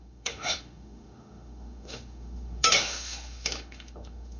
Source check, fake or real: fake